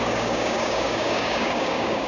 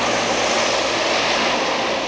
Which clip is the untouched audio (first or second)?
second